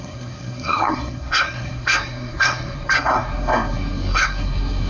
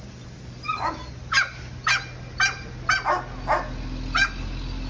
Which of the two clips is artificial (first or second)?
first